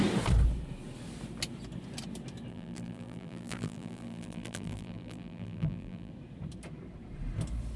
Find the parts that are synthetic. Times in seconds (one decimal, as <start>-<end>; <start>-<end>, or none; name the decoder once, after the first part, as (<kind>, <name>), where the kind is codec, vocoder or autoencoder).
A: 2.5-6.1 (vocoder, BigVGAN v2)